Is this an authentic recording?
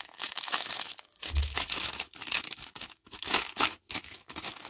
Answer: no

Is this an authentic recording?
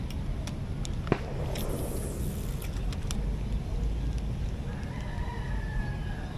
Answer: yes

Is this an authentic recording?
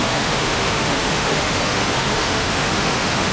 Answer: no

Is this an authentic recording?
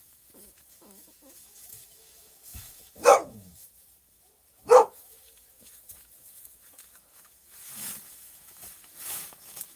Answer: no